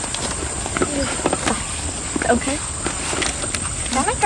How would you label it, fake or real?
real